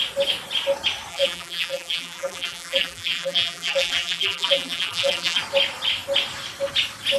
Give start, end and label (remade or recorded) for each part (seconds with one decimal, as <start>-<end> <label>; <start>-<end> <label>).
0.0-1.1 recorded; 1.1-5.4 remade; 5.4-7.2 recorded